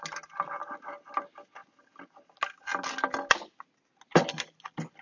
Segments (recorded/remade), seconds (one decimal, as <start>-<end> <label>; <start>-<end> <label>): 0.0-5.0 recorded